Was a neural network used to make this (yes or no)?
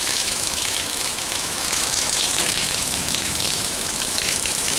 yes